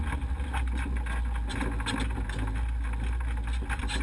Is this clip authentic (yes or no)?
yes